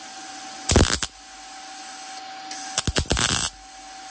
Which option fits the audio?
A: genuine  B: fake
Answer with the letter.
A